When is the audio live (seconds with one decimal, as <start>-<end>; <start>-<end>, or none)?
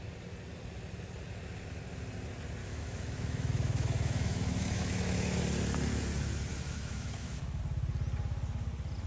0.0-2.6; 5.4-6.5; 7.6-9.1